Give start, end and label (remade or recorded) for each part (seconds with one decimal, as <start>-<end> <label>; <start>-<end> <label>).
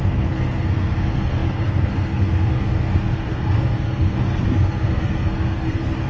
0.0-6.1 remade